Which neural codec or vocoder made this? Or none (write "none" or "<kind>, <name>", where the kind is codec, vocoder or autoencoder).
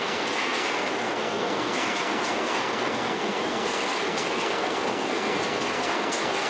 codec, SNAC